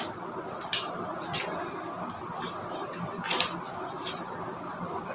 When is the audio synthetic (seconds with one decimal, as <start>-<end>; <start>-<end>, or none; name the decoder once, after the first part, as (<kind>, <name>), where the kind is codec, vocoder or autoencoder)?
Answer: 2.2-5.1 (vocoder, BigVGAN v2)

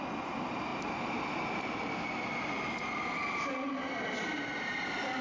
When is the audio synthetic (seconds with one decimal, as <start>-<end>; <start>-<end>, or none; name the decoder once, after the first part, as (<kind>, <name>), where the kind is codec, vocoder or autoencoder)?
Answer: none

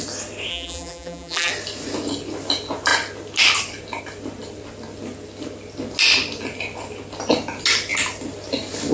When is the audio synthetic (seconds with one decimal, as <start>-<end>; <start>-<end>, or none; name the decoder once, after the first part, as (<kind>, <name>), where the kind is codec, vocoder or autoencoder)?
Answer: 0.5-1.5 (vocoder, BigVGAN v2)

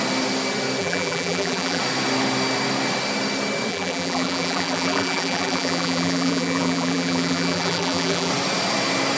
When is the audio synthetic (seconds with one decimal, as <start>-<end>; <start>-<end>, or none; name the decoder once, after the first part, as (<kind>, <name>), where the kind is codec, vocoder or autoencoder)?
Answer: 0.8-1.8 (vocoder, BigVGAN v2); 3.7-8.3

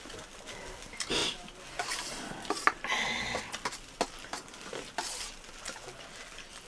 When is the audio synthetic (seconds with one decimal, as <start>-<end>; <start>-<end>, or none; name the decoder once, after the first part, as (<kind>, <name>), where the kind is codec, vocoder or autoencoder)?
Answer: 1.2-3.6 (vocoder, BigVGAN v2); 4.7-5.5

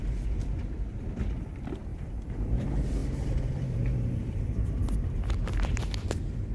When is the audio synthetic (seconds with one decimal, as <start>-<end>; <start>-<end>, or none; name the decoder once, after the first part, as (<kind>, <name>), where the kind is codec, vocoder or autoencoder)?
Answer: 1.9-2.6 (vocoder, BigVGAN v2); 3.0-5.8